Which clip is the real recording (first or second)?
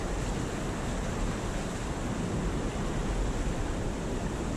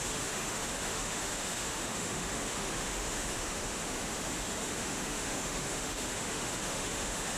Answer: first